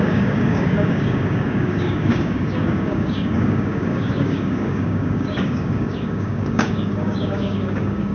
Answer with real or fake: fake